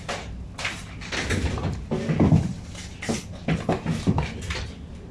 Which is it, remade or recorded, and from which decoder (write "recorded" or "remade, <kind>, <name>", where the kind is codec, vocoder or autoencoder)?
recorded